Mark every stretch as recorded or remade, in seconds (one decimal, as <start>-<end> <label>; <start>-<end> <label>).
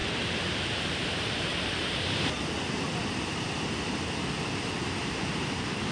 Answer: 0.0-1.5 remade; 1.5-5.0 recorded; 5.0-5.9 remade